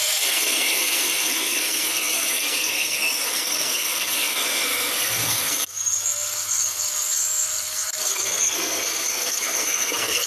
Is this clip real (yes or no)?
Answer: no